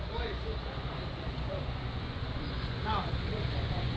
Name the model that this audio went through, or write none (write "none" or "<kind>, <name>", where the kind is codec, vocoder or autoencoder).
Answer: vocoder, Vocos